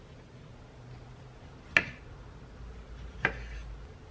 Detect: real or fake real